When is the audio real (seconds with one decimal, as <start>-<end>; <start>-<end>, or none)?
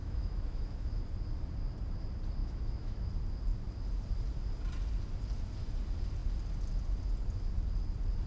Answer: 1.0-2.4; 3.1-8.3